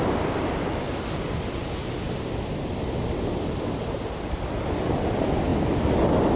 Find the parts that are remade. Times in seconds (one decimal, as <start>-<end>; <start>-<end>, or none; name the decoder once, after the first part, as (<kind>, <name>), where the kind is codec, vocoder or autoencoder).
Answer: none